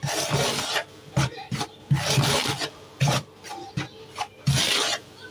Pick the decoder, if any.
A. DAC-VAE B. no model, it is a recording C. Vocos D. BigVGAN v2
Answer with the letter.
D